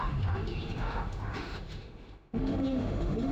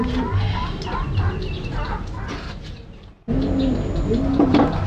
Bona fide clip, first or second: second